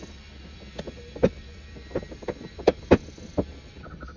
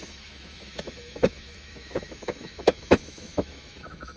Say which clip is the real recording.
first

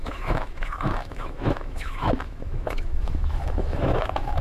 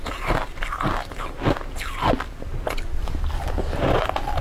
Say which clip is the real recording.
second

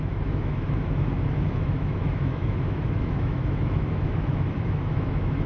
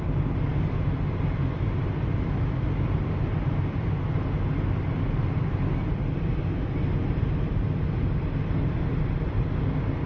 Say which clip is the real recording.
second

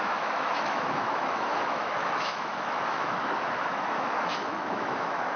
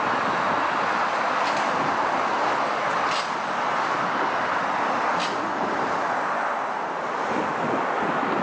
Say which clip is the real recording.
second